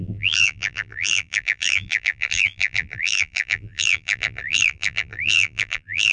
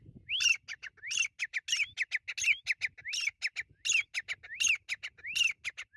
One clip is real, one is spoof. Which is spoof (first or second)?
first